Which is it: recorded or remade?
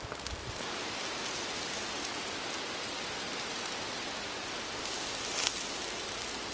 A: recorded